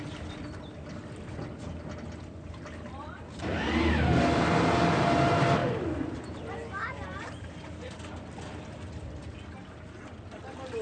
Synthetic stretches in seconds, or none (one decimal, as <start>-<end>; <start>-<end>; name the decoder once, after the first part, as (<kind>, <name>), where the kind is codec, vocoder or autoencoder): none